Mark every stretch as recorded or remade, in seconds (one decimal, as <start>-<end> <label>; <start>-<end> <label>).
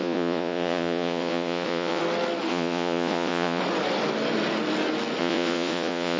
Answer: 0.0-2.0 remade; 2.0-2.5 recorded; 2.5-3.6 remade; 3.6-5.2 recorded; 5.2-6.2 remade